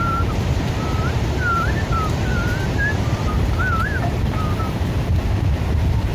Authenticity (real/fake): fake